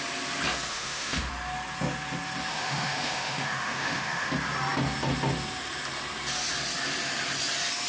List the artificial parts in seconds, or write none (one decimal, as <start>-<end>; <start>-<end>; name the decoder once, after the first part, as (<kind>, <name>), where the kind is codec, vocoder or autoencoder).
0.7-1.3 (autoencoder, DAC-VAE); 2.5-4.3